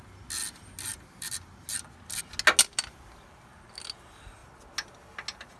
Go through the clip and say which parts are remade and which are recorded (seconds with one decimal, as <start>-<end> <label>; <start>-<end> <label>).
0.0-5.6 recorded

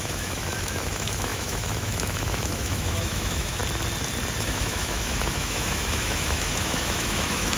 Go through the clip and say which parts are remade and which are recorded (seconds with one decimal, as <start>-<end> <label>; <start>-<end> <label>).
0.0-3.6 remade; 3.6-4.4 recorded; 4.4-7.6 remade

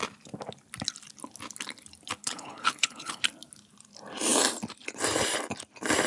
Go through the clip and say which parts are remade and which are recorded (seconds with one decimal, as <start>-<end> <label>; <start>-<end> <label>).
0.0-2.2 recorded; 2.2-3.2 remade; 3.2-6.1 recorded

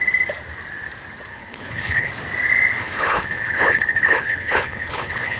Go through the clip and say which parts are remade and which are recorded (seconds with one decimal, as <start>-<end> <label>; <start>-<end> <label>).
0.0-1.3 recorded; 1.3-2.1 remade; 2.1-2.8 recorded; 2.8-5.4 remade

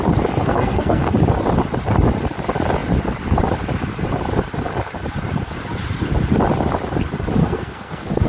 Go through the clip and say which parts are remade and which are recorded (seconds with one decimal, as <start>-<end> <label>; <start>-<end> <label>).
0.0-0.4 recorded; 0.4-1.0 remade; 1.0-7.4 recorded; 7.4-8.3 remade